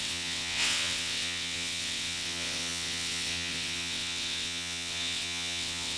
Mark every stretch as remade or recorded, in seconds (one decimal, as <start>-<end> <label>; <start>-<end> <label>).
0.0-6.0 remade